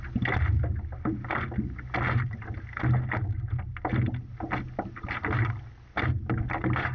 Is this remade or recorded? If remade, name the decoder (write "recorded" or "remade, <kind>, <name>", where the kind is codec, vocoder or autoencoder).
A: recorded